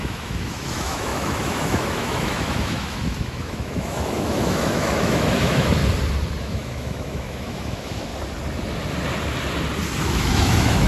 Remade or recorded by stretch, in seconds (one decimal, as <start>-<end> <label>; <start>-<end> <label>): 0.0-5.8 remade; 5.8-6.4 recorded; 6.4-8.1 remade; 8.1-10.0 recorded; 10.0-10.9 remade